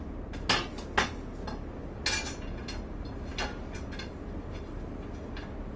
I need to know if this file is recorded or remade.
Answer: recorded